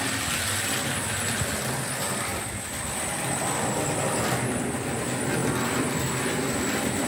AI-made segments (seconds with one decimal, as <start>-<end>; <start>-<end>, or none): none